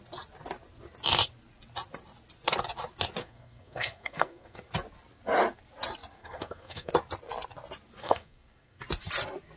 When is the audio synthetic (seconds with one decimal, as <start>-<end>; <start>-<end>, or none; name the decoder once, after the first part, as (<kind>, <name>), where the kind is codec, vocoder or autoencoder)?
3.2-4.6 (codec, SNAC); 6.2-6.9; 8.0-8.8